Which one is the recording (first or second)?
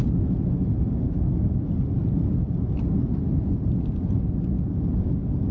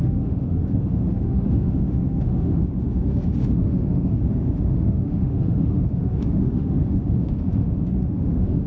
first